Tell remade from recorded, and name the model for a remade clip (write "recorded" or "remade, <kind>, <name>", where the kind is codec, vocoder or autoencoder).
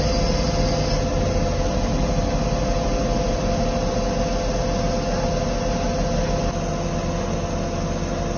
recorded